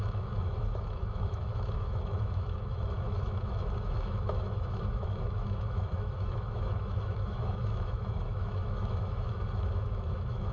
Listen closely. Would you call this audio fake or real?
fake